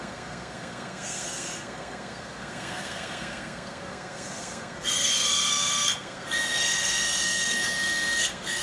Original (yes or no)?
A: no